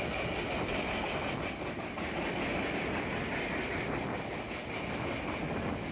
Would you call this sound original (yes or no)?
yes